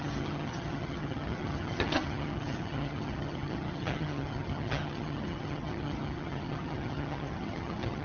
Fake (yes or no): yes